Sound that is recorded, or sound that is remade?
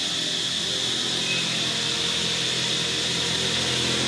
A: recorded